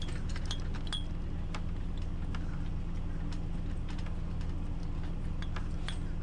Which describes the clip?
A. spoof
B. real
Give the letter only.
B